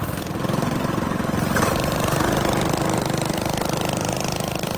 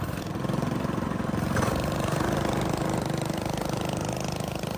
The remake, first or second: first